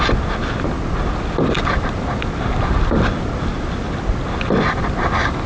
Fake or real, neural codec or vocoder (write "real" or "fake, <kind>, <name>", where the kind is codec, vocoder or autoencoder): real